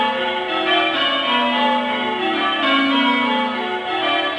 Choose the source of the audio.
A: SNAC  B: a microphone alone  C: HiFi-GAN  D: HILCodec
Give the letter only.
B